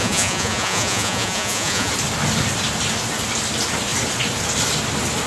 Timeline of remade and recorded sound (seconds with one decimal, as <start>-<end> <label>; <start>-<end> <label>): 0.0-1.9 remade; 1.9-5.3 recorded